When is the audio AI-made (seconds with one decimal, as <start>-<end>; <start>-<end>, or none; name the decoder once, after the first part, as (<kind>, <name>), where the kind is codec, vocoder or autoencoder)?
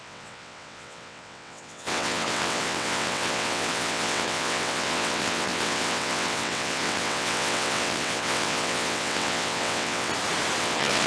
0.0-10.1 (vocoder, WaveNeXt); 10.6-11.1